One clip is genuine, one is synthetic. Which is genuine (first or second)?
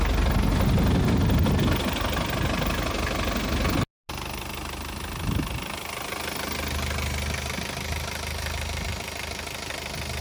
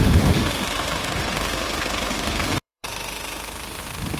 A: first